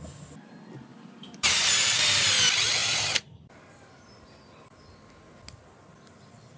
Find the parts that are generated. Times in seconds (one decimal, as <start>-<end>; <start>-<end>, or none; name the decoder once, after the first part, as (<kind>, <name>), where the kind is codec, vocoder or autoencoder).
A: 0.9-2.4 (vocoder, BigVGAN v2); 2.8-4.3

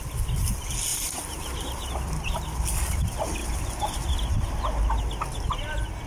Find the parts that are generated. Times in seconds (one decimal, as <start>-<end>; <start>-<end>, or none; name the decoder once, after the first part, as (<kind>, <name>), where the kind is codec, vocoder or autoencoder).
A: 0.9-2.4 (vocoder, BigVGAN v2); 3.4-4.8

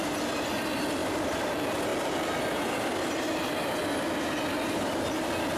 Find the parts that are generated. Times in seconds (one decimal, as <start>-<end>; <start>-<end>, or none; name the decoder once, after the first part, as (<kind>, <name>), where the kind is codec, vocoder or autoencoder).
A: 1.0-1.5 (vocoder, BigVGAN v2)

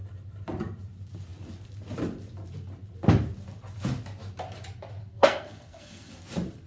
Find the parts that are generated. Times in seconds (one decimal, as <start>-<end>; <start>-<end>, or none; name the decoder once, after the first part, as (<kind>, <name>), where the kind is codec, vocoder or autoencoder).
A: 5.1-6.1 (codec, SNAC)